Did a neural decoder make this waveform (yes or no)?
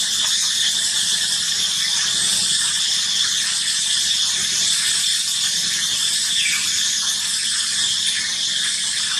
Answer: no